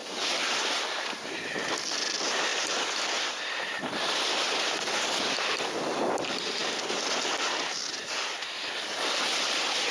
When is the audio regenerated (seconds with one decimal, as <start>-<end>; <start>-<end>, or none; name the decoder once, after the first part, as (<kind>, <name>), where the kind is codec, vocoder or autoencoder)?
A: 0.0-1.3 (vocoder, BigVGAN v2); 2.5-6.0